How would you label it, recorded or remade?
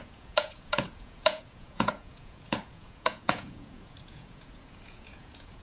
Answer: remade